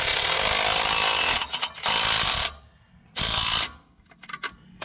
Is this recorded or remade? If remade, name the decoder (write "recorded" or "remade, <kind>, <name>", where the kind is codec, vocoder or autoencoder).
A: recorded